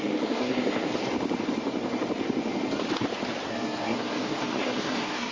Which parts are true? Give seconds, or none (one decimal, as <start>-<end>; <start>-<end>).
1.0-3.5